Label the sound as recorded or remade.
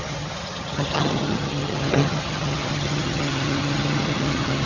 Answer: remade